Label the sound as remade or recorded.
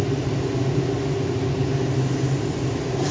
recorded